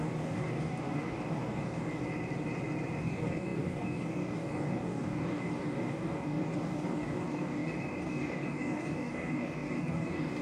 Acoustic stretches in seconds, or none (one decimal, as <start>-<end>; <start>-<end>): 2.0-3.0